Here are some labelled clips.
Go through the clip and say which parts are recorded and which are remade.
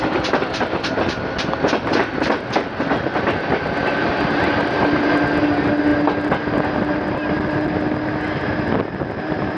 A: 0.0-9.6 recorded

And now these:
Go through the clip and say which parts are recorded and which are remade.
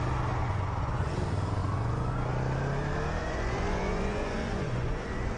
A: 0.0-0.4 recorded; 0.4-1.2 remade; 1.2-1.6 recorded; 1.6-2.3 remade; 2.3-3.2 recorded; 3.2-5.4 remade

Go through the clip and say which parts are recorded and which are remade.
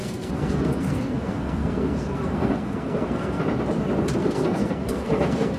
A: 0.0-3.4 remade; 3.4-4.2 recorded; 4.2-5.6 remade